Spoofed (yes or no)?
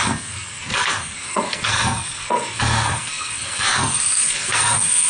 yes